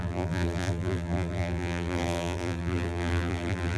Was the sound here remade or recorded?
remade